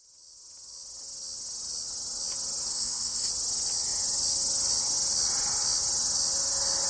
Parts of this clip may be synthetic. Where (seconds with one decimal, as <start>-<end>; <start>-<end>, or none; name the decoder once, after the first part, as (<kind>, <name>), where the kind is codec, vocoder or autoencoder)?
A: 2.7-3.3 (codec, SNAC)